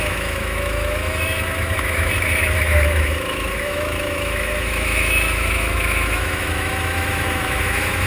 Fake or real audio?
fake